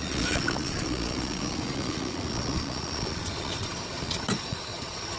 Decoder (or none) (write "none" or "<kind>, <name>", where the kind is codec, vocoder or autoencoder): vocoder, Vocos